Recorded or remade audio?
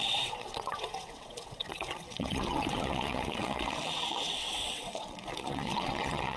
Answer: remade